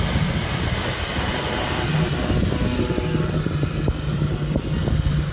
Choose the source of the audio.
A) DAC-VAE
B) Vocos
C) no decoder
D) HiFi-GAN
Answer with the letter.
C